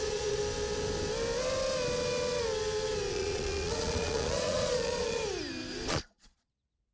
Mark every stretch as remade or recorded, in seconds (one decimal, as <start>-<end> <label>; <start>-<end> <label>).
0.0-0.4 remade; 0.4-3.1 recorded; 3.1-5.2 remade; 5.2-5.9 recorded; 5.9-6.9 remade